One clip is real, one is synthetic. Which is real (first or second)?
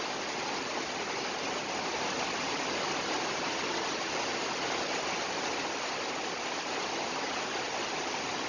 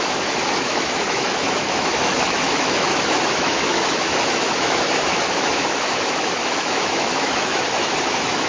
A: first